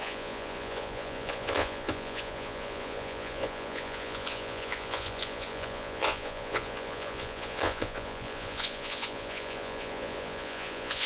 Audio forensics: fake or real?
fake